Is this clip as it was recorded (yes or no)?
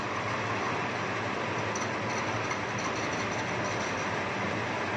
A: yes